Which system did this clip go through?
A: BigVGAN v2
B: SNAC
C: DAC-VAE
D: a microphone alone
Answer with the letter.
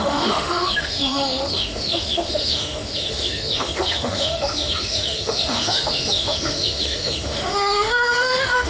C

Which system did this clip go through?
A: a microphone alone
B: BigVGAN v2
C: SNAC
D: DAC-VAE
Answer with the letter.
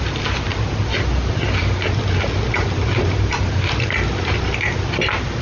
A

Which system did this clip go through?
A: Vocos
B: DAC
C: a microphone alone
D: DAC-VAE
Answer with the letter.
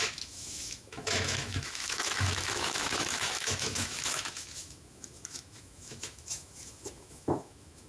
D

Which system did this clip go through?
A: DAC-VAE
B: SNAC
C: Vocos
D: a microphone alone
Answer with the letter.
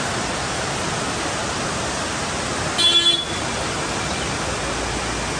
D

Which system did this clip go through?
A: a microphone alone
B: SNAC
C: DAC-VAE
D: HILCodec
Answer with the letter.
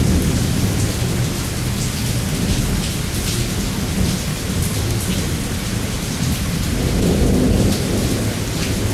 A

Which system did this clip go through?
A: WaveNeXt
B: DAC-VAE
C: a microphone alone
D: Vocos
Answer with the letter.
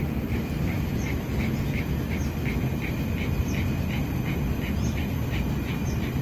C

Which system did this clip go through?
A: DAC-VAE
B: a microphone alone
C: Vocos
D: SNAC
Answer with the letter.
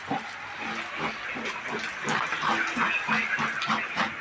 B